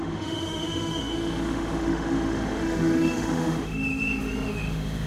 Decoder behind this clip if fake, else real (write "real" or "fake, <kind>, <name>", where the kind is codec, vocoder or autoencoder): fake, autoencoder, DAC-VAE